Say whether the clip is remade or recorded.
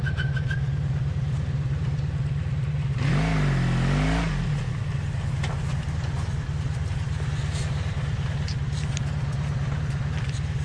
recorded